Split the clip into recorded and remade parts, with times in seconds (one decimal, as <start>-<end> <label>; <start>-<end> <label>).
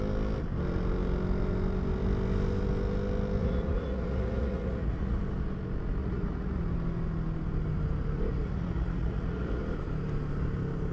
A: 0.0-3.4 recorded; 3.4-5.2 remade; 5.2-6.0 recorded; 6.0-6.6 remade; 6.6-8.3 recorded; 8.3-9.6 remade; 9.6-10.9 recorded